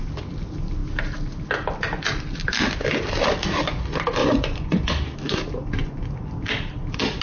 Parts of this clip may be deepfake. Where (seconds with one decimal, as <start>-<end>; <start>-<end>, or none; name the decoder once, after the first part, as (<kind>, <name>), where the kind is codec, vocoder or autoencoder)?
4.2-4.9 (vocoder, Vocos); 5.8-6.3